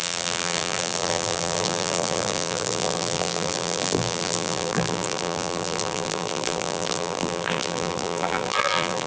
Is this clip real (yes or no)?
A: no